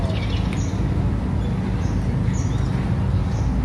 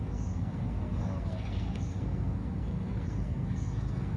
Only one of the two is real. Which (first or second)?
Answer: first